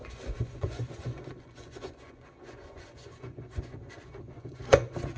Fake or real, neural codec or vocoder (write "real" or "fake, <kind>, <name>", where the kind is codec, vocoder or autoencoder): fake, vocoder, Vocos